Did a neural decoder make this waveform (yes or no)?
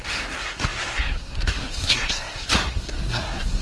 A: yes